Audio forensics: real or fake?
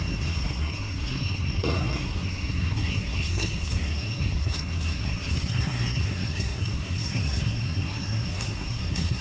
fake